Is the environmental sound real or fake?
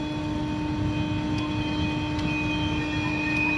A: real